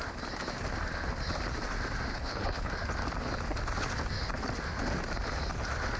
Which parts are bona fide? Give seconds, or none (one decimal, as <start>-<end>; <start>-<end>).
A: 0.0-2.1; 2.7-6.0